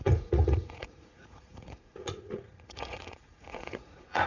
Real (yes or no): no